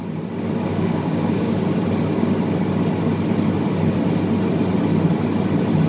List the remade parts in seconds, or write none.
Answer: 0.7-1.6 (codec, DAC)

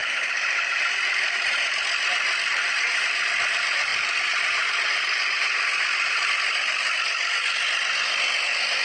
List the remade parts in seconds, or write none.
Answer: 0.0-0.8 (vocoder, BigVGAN v2); 2.6-3.1

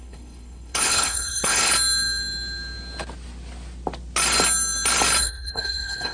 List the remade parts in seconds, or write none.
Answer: 0.0-1.7 (codec, HILCodec); 5.2-6.1

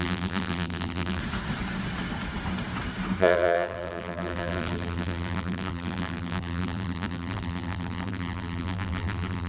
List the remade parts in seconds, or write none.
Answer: 0.0-1.2 (vocoder, BigVGAN v2); 3.2-9.5

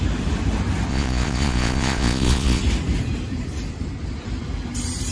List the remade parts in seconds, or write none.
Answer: 0.9-2.6 (vocoder, Vocos)

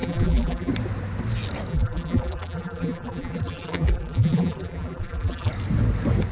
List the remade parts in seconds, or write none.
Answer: 0.0-0.7 (vocoder, BigVGAN v2); 1.7-5.5

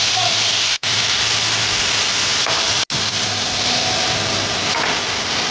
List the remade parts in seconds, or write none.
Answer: none

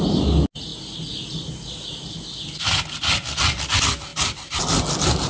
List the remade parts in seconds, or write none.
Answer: none